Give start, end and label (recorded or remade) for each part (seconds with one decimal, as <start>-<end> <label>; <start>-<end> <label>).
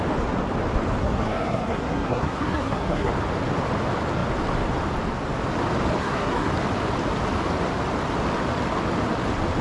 0.0-1.0 recorded; 1.0-3.1 remade; 3.1-6.0 recorded; 6.0-6.5 remade; 6.5-9.6 recorded